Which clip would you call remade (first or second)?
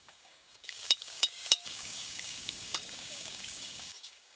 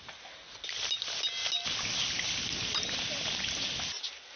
first